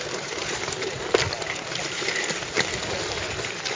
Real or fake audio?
real